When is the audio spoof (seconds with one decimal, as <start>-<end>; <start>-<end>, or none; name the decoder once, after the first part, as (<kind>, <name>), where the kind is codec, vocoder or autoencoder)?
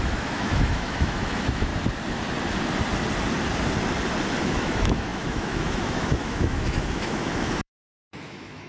0.0-1.7 (autoencoder, DAC-VAE); 4.4-8.7